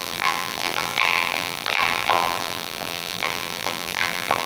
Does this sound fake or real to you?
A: fake